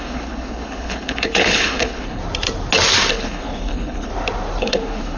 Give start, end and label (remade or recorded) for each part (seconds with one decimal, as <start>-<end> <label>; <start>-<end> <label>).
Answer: 0.0-2.2 remade; 2.2-3.1 recorded; 3.1-4.1 remade; 4.1-4.6 recorded; 4.6-5.2 remade